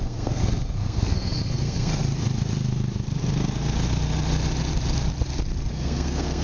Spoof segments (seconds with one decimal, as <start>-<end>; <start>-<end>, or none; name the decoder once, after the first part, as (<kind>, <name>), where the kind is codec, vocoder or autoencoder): 0.0-1.9 (codec, SNAC); 5.7-6.4